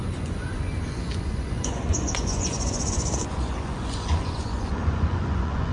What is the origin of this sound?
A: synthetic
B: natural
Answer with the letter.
A